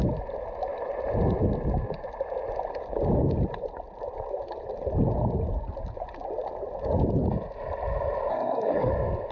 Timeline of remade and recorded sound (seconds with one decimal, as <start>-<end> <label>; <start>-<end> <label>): 0.0-8.3 recorded; 8.3-8.9 remade; 8.9-9.3 recorded

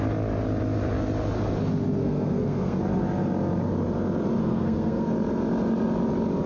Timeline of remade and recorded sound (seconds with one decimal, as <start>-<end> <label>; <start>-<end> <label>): 0.0-2.0 recorded; 2.0-2.8 remade; 2.8-4.4 recorded; 4.4-5.1 remade; 5.1-6.5 recorded